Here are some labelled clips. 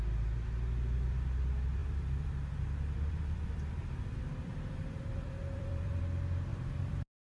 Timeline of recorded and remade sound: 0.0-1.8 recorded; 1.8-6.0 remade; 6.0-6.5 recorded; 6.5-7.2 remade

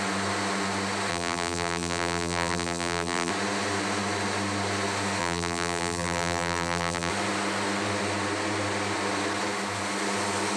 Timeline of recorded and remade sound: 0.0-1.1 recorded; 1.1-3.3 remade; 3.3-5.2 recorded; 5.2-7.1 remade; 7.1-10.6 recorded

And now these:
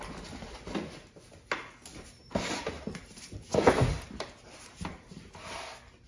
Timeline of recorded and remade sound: 0.0-1.9 recorded; 1.9-5.6 remade; 5.6-6.1 recorded

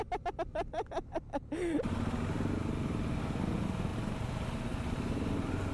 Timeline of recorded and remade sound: 0.0-5.7 recorded

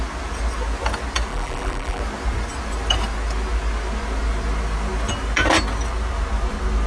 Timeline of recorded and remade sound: 0.0-1.3 recorded; 1.3-2.0 remade; 2.0-6.9 recorded

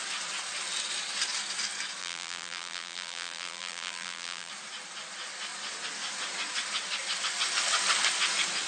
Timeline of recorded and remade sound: 0.0-2.0 recorded; 2.0-4.5 remade; 4.5-8.7 recorded